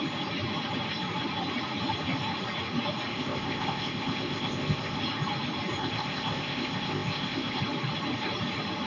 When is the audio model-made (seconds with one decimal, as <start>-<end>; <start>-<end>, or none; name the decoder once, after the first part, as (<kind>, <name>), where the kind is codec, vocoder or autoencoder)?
3.1-5.0 (codec, ZipCodec); 5.8-7.6

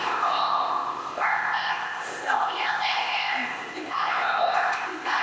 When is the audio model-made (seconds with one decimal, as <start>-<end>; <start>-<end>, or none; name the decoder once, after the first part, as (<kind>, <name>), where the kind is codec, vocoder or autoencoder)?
0.0-5.2 (codec, ZipCodec)

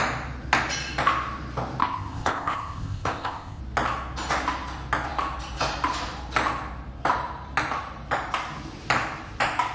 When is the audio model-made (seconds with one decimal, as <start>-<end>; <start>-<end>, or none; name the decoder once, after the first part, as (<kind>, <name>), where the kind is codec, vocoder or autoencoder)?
1.8-3.6 (codec, ZipCodec)

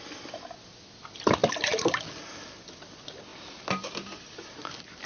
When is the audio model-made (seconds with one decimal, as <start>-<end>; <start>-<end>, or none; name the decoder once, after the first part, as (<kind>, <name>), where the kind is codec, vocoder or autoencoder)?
none

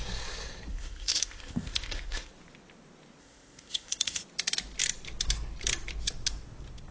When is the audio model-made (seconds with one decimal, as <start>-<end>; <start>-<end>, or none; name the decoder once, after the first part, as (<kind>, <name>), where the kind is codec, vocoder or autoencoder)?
0.7-2.3 (codec, ZipCodec); 3.2-4.2

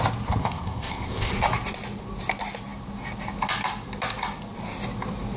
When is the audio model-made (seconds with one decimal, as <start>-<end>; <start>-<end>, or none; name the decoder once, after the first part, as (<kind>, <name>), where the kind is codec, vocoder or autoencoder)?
0.4-1.3 (codec, ZipCodec)

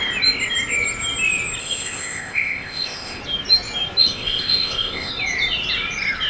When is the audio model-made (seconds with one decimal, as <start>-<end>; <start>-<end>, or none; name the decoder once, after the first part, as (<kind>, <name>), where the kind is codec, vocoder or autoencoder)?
1.6-3.2 (codec, ZipCodec); 4.0-5.1